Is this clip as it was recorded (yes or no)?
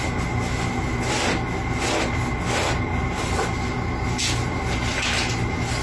yes